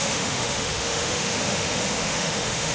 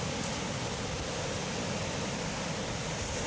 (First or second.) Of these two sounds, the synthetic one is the first